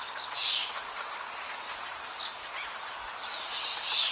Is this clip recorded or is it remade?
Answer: recorded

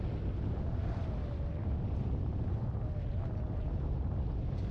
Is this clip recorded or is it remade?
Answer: recorded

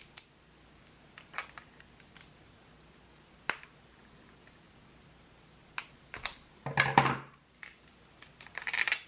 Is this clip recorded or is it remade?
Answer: recorded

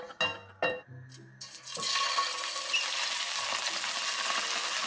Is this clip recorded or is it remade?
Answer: recorded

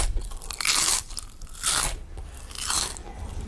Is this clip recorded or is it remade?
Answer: recorded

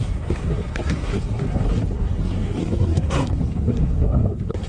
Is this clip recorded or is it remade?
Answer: remade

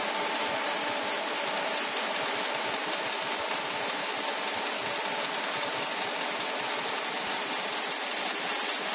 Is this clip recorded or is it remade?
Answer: recorded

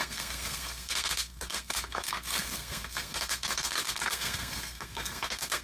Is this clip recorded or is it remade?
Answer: remade